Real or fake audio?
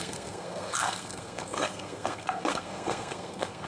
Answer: fake